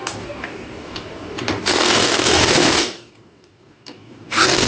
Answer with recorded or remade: remade